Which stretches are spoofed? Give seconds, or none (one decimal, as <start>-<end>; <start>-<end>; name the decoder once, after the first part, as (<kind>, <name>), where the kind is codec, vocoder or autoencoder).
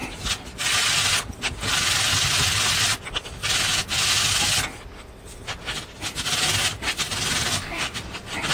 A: 7.5-8.0 (codec, DAC)